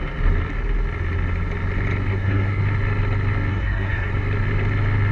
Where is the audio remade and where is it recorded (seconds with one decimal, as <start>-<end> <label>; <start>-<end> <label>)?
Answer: 0.0-2.1 recorded; 2.1-2.6 remade; 2.6-3.5 recorded; 3.5-4.1 remade; 4.1-5.1 recorded